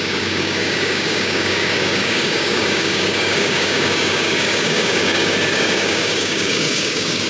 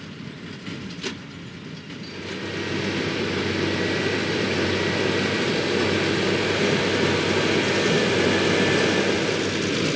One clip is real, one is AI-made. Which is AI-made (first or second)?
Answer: first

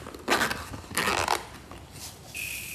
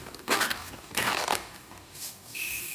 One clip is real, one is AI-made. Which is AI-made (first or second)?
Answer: second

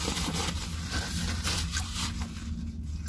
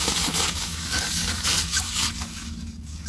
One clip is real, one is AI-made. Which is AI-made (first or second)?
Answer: second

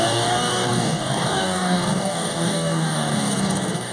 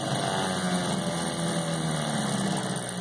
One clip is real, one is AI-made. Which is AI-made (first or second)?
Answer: first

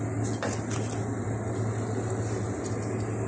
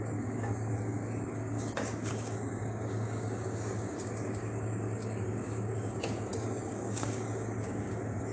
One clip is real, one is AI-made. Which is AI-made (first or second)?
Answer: second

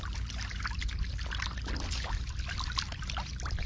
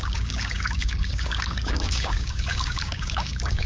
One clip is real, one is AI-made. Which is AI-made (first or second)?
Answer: second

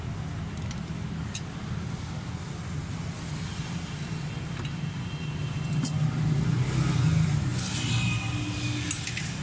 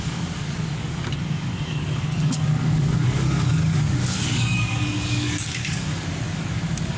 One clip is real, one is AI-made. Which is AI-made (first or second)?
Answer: second